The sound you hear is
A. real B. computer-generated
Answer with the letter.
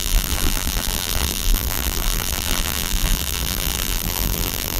B